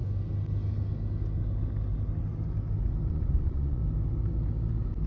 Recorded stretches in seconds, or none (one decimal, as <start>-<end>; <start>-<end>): 0.0-3.1; 3.8-5.1